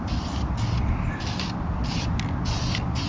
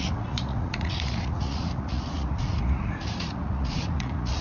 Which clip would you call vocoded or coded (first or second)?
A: second